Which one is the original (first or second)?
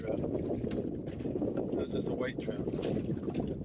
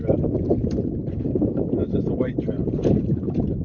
first